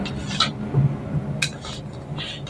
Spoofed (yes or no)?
no